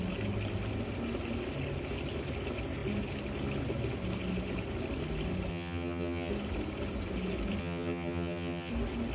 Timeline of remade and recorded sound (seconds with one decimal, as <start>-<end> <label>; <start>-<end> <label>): 0.0-5.5 recorded; 5.5-6.3 remade; 6.3-7.6 recorded; 7.6-8.7 remade; 8.7-9.1 recorded